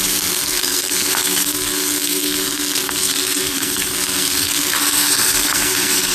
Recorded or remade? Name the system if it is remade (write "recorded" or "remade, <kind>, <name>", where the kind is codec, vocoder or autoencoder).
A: remade, codec, SNAC